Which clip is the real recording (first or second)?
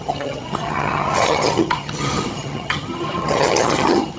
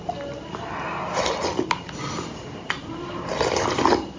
second